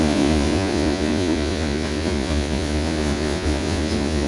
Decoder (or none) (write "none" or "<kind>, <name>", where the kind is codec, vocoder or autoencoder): vocoder, Vocos